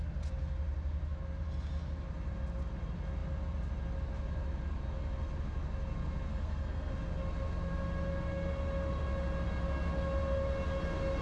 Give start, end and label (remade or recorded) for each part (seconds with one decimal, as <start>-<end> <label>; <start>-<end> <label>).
0.0-6.3 recorded; 6.3-6.9 remade; 6.9-11.2 recorded